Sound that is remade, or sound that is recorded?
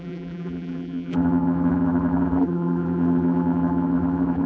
remade